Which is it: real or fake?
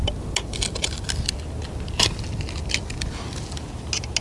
real